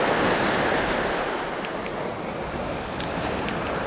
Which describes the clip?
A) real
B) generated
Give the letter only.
A